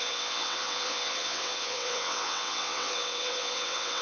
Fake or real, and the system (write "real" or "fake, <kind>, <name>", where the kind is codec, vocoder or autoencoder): fake, vocoder, WaveNeXt